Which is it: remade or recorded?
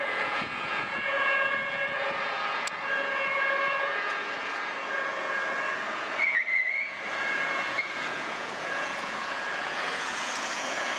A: remade